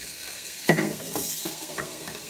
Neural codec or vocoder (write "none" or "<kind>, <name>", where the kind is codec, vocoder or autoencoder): codec, SNAC